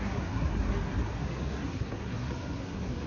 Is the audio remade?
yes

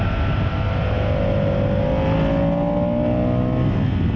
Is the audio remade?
no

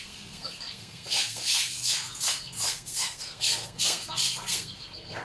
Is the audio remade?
yes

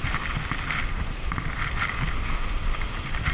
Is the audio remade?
no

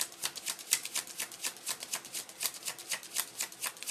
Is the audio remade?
no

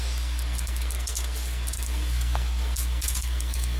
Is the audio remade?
yes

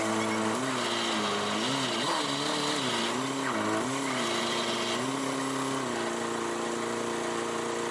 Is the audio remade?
no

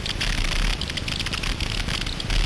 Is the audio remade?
no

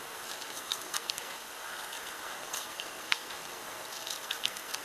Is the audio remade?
yes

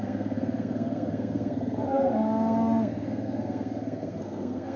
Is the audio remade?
yes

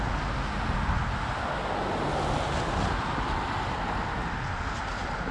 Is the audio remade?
no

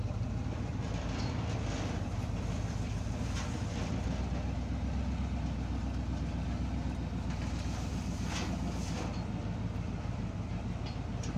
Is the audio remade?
no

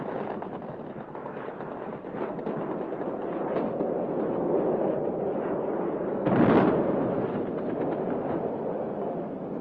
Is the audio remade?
no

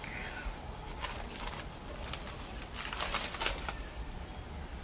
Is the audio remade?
no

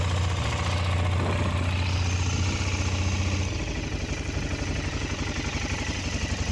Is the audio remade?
no